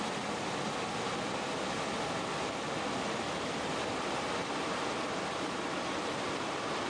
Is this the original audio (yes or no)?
yes